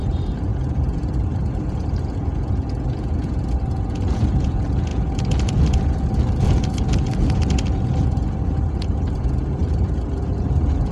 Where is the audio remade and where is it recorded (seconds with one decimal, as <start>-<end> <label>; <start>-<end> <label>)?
0.0-10.9 remade